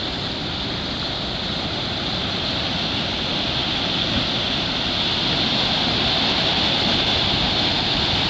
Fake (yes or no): no